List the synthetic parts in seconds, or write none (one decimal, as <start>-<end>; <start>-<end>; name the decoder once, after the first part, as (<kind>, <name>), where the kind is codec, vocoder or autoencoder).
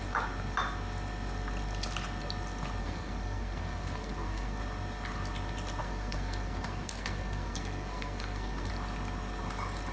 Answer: 2.8-4.6 (codec, SNAC); 5.8-8.7